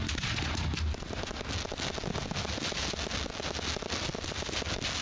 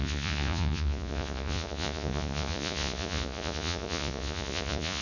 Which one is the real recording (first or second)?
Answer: first